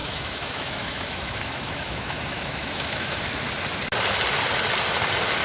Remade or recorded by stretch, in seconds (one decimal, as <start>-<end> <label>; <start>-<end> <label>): 0.0-3.2 remade; 3.2-5.4 recorded